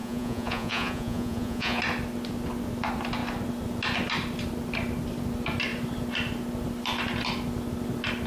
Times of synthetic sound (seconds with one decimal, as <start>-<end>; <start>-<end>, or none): 0.0-1.8